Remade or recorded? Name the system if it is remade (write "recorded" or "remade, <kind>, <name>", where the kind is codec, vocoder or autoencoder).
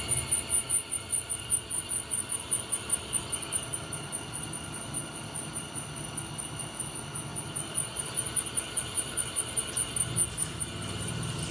recorded